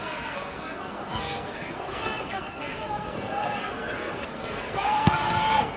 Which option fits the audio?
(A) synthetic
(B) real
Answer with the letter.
A